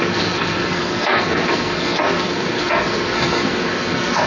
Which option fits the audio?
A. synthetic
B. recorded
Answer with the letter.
A